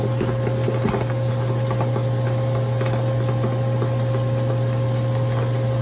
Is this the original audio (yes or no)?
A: yes